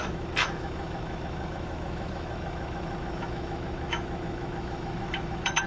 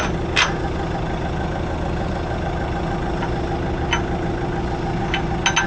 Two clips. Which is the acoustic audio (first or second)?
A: second